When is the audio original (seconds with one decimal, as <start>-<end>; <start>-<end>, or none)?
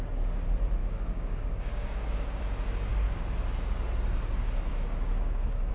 0.0-0.8; 2.4-4.7